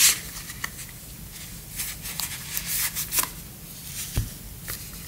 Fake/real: real